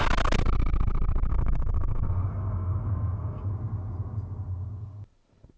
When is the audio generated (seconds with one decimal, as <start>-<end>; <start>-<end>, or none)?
1.3-3.5